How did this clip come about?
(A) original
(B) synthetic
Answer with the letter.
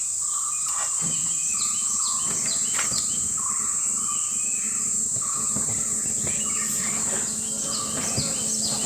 A